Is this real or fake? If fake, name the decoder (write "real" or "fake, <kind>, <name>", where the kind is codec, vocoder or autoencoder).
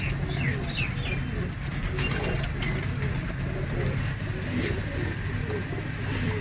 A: real